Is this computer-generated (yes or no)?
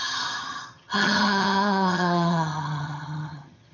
yes